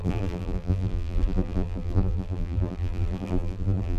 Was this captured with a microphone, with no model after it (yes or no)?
no